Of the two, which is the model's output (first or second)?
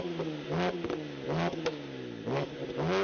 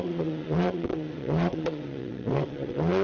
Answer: second